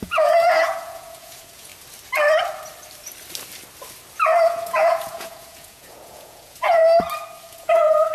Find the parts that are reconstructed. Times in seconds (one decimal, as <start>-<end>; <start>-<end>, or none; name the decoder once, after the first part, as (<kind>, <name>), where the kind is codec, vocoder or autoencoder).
0.0-1.7 (vocoder, Vocos); 4.4-6.8; 7.5-8.1